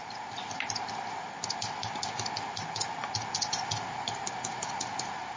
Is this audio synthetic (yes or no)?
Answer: no